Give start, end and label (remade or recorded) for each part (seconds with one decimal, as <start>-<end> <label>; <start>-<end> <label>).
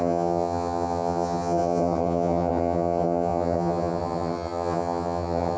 0.0-5.6 remade